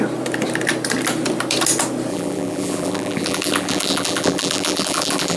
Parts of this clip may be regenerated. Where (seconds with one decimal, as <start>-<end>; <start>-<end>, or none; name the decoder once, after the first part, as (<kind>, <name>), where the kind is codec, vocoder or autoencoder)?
2.1-5.4 (vocoder, BigVGAN v2)

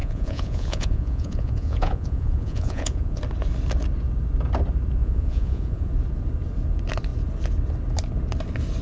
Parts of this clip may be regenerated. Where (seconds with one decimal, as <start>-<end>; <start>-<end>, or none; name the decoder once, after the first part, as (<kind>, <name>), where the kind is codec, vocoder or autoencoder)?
0.0-3.2 (vocoder, Vocos); 5.0-5.9

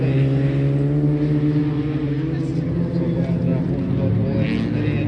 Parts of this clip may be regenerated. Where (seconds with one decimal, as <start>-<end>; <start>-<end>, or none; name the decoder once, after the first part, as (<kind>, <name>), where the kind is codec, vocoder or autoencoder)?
none

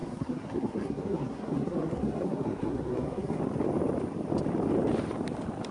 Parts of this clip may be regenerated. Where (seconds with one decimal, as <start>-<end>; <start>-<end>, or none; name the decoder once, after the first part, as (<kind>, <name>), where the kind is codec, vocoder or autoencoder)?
0.0-3.4 (codec, SNAC)

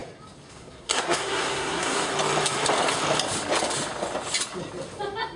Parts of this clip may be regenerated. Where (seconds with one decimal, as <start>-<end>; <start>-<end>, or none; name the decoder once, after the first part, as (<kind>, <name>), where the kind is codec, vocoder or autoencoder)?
0.5-2.1 (codec, SNAC)

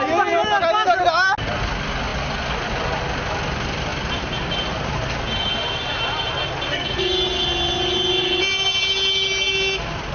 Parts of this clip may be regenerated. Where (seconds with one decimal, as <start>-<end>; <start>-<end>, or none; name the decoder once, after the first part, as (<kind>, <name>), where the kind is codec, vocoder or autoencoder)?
none